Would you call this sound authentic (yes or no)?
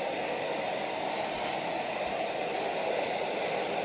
no